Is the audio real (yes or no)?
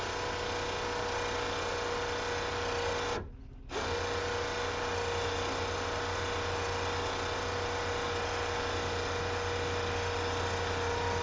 yes